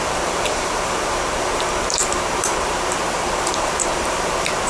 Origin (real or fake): fake